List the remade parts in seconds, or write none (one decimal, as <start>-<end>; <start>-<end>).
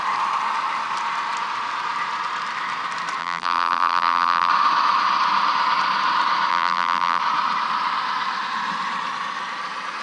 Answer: 3.2-4.5; 6.5-7.2